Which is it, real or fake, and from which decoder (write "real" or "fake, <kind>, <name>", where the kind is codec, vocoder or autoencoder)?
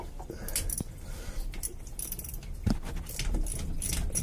real